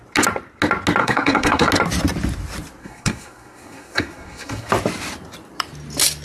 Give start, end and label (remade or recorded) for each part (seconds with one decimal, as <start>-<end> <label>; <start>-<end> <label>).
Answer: 0.0-1.0 recorded; 1.0-1.7 remade; 1.7-2.8 recorded; 2.8-4.7 remade; 4.7-6.2 recorded

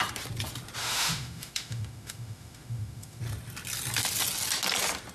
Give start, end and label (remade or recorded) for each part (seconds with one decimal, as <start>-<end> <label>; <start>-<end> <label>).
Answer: 0.0-0.8 recorded; 0.8-3.2 remade; 3.2-5.1 recorded

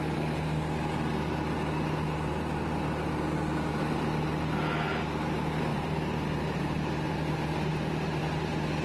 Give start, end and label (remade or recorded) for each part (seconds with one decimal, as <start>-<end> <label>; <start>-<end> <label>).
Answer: 0.0-5.7 recorded; 5.7-7.1 remade; 7.1-7.7 recorded; 7.7-8.2 remade; 8.2-8.8 recorded

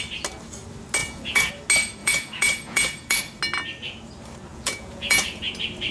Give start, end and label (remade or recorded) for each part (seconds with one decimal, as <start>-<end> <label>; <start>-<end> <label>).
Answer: 0.0-1.0 recorded; 1.0-1.5 remade; 1.5-2.0 recorded; 2.0-3.2 remade; 3.2-4.5 recorded; 4.5-5.5 remade; 5.5-5.9 recorded